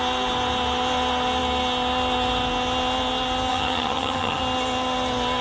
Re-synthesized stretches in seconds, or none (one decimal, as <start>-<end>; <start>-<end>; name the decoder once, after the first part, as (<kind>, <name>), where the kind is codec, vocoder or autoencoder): 3.5-4.4 (vocoder, HiFi-GAN)

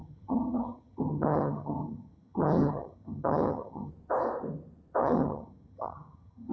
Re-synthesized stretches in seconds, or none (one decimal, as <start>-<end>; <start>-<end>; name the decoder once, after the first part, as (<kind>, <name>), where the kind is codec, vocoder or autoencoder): 0.0-3.9 (vocoder, HiFi-GAN); 5.0-6.5

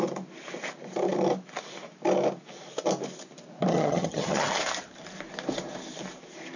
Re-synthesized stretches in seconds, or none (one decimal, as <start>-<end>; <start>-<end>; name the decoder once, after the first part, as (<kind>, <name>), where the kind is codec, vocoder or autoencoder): 3.7-4.5 (vocoder, HiFi-GAN)

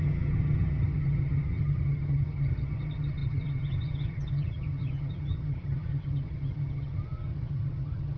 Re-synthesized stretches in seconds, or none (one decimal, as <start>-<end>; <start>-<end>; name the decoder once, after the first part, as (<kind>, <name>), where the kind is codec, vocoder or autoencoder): 0.0-8.2 (vocoder, HiFi-GAN)

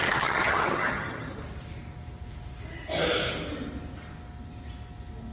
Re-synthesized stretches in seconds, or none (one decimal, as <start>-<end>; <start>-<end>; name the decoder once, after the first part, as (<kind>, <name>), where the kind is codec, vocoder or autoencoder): 0.0-1.4 (vocoder, HiFi-GAN)

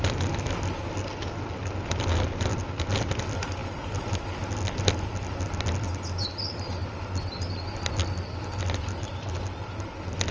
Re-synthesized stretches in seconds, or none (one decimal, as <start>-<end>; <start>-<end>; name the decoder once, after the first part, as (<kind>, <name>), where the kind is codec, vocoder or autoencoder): none